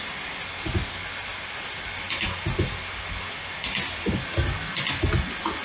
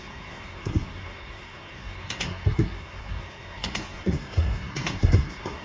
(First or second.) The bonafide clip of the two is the first